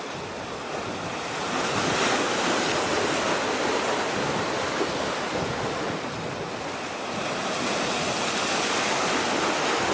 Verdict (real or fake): real